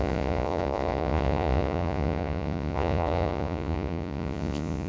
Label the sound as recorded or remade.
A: remade